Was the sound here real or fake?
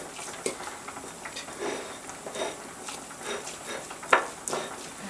real